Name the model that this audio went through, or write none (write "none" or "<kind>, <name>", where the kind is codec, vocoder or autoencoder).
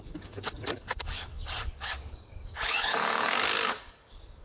codec, DAC